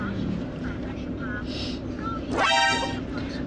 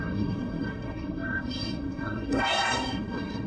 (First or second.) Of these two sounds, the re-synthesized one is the second